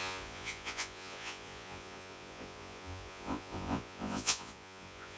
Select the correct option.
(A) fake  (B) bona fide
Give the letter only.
A